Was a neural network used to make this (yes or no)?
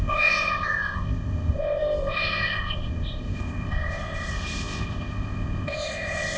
yes